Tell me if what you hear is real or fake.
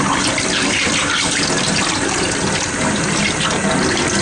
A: real